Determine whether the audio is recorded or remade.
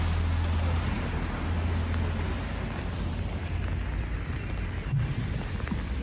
recorded